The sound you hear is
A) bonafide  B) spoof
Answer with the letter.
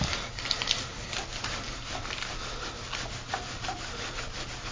A